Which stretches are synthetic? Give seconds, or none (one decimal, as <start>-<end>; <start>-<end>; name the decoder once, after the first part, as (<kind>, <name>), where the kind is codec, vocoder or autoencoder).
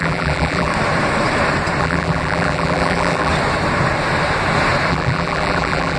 0.0-0.7 (vocoder, BigVGAN v2); 1.8-3.3; 4.9-6.0